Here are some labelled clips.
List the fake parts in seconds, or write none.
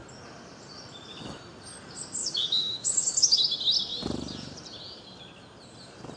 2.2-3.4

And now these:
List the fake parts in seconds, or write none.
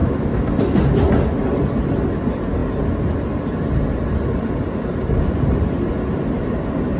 0.0-0.5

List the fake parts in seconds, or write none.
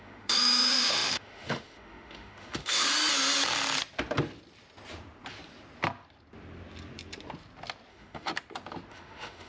0.0-2.9; 7.9-8.3; 8.9-9.5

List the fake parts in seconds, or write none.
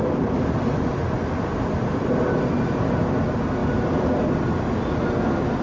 none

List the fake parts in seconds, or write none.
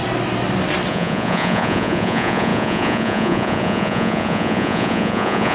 0.9-5.5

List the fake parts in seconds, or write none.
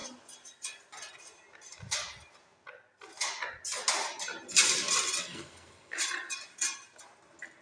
5.2-6.0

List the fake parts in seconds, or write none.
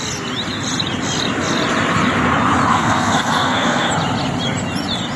2.7-3.9